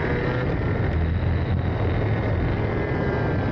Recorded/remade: recorded